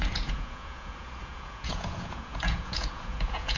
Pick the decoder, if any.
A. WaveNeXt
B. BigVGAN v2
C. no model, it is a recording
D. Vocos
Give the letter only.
D